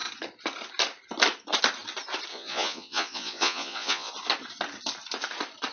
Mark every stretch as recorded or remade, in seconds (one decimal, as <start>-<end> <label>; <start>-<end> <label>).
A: 0.0-2.3 recorded; 2.3-4.1 remade; 4.1-5.7 recorded